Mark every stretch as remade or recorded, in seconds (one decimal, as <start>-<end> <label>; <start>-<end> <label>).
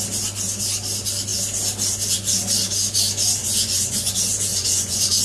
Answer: 0.0-3.4 recorded; 3.4-4.1 remade; 4.1-4.5 recorded; 4.5-5.2 remade